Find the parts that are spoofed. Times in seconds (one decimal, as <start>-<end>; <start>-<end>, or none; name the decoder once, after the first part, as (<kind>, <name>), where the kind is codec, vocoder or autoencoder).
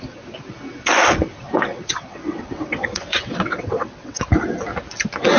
1.7-4.2 (vocoder, WaveNeXt)